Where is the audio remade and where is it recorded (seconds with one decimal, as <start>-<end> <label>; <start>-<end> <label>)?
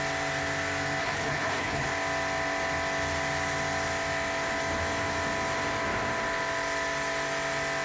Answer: 0.0-1.0 recorded; 1.0-1.9 remade; 1.9-7.8 recorded